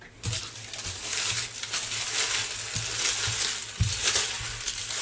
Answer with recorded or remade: recorded